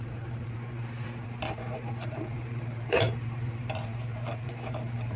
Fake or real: fake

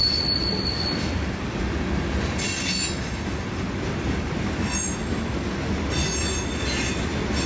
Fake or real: real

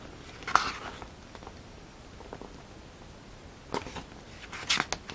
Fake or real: real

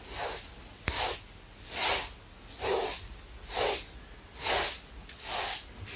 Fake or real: real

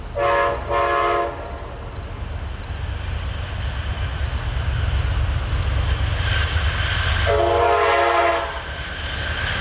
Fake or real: real